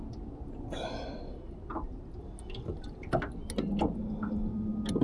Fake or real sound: real